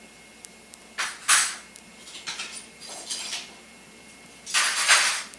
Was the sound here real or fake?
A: real